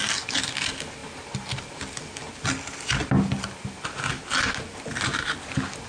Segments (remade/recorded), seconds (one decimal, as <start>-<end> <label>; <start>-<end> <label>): 0.0-5.9 recorded